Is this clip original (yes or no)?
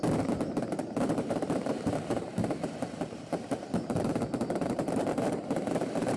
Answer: no